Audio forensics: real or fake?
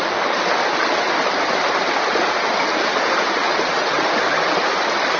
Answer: real